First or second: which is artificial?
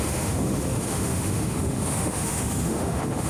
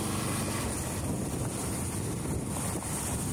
first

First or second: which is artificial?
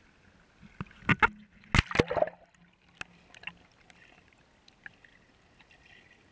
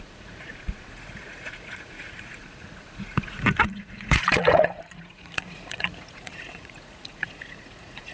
second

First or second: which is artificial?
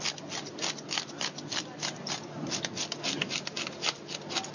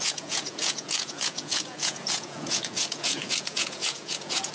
second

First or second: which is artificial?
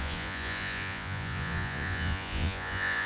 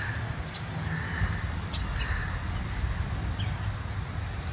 first